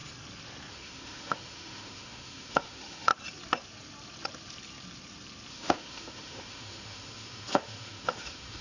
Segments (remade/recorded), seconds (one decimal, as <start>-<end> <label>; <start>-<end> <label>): 0.0-0.7 recorded; 0.7-3.1 remade; 3.1-5.5 recorded; 5.5-8.6 remade